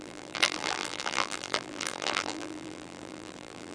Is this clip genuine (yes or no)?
no